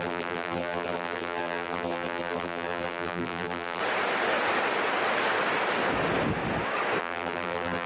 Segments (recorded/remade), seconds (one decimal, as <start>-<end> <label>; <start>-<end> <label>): 0.0-3.8 remade; 3.8-7.0 recorded; 7.0-7.9 remade